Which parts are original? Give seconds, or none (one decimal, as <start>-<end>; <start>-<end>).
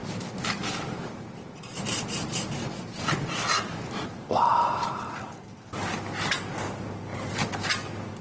4.7-8.2